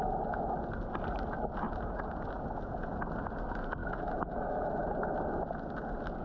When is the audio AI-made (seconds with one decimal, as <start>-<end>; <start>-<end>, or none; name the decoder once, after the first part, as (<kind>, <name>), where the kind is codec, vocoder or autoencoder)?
3.8-4.7 (autoencoder, DAC-VAE)